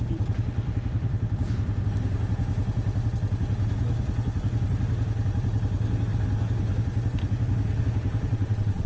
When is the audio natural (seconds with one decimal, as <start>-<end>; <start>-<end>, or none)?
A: 0.0-8.3